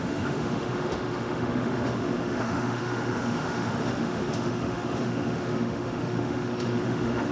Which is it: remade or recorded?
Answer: remade